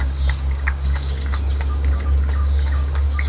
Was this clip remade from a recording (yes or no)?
yes